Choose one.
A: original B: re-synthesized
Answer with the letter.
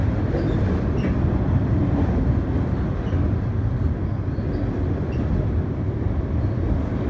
A